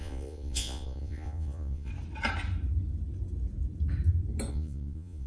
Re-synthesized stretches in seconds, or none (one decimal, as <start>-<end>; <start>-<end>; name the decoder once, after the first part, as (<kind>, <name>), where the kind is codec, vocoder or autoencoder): 0.0-1.9 (vocoder, Vocos); 4.5-5.3

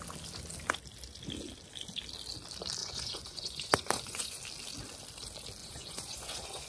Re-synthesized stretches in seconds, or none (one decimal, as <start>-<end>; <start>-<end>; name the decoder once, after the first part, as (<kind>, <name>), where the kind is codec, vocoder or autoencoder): 2.8-4.4 (vocoder, Vocos); 5.6-6.7

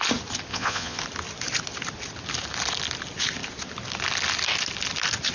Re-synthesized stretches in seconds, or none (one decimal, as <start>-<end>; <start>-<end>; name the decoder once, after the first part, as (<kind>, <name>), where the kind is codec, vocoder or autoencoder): 0.5-1.0 (vocoder, Vocos)

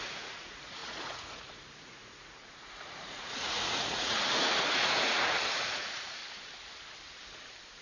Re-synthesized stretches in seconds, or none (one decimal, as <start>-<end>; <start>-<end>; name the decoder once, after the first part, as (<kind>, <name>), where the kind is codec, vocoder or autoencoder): 0.0-6.2 (vocoder, Vocos)

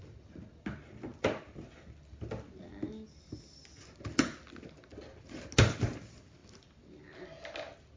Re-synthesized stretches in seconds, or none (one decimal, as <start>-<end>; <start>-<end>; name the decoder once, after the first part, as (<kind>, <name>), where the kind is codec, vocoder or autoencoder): none

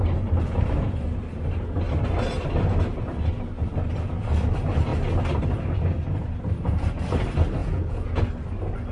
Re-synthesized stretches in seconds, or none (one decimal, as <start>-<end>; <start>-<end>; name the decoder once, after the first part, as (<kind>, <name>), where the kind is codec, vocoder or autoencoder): 7.6-8.2 (vocoder, Vocos)

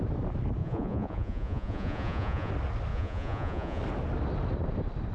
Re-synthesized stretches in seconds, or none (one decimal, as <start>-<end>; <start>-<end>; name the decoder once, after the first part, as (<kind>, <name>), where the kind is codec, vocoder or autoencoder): 0.6-2.5 (vocoder, Vocos); 2.9-3.8

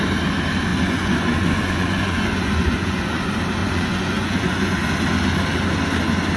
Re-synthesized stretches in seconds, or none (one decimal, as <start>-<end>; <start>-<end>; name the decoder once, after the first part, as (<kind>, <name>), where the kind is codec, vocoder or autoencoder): 0.7-3.2 (vocoder, Vocos); 3.6-4.9